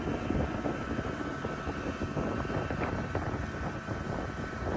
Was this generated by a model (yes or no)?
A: no